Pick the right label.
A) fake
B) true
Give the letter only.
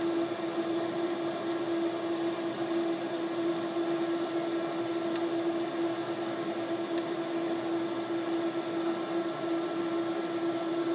B